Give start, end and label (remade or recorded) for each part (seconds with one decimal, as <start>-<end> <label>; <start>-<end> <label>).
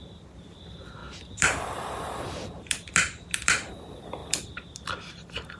0.0-5.6 recorded